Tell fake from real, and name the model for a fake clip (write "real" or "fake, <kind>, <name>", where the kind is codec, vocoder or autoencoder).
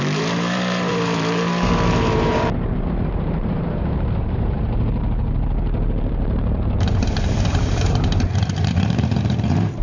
fake, vocoder, BigVGAN v2